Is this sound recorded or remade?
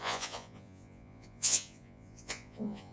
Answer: remade